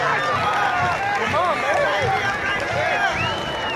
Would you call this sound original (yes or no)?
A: yes